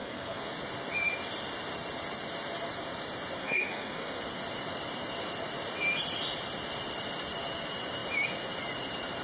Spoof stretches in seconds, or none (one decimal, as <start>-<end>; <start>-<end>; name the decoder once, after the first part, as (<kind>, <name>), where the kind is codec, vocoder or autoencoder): 0.0-0.5 (codec, SNAC); 3.4-4.2